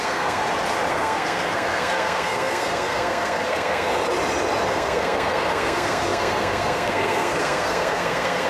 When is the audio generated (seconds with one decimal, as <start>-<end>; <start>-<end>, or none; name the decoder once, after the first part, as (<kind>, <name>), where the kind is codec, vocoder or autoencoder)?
0.0-0.4 (codec, SNAC); 0.9-3.9; 4.7-8.5